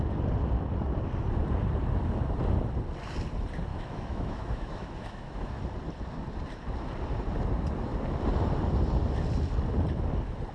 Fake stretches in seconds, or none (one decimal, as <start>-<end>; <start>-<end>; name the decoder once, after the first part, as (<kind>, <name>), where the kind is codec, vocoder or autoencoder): 3.7-5.6 (autoencoder, DAC-VAE)